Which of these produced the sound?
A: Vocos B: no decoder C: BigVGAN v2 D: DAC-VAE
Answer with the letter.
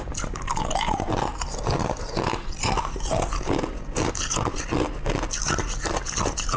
B